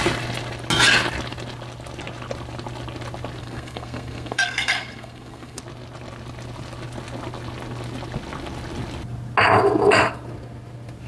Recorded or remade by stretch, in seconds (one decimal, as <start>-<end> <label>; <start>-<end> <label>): 0.0-3.4 recorded; 3.4-5.6 remade; 5.6-11.1 recorded